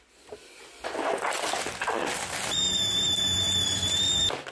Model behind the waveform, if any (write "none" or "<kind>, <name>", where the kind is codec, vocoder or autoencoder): none